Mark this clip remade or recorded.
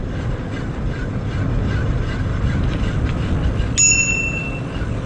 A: recorded